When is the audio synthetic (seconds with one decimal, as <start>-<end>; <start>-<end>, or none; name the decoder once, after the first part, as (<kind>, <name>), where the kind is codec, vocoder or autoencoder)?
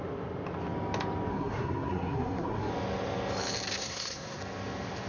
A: 1.3-2.7 (codec, SNAC); 3.8-4.4